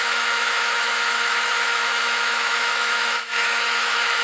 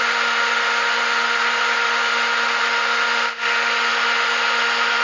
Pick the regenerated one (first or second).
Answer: first